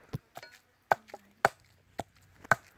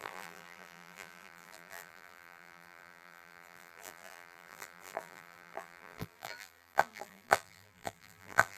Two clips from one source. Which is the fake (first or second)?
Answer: second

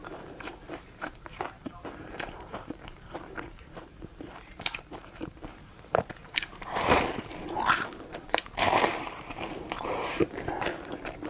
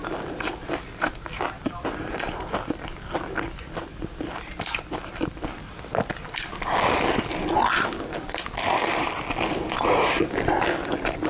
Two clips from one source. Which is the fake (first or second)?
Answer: first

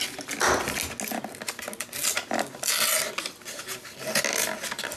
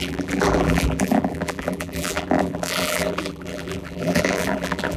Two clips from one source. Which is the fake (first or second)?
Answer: second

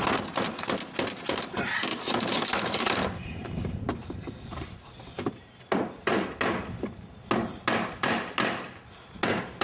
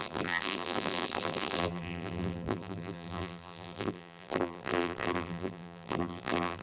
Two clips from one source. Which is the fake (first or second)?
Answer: second